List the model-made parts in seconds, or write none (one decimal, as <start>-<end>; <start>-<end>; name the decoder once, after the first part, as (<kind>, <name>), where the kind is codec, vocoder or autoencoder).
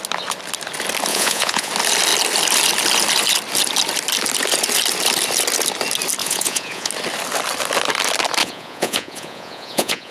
1.1-1.7 (vocoder, Vocos); 6.2-6.9; 8.4-10.1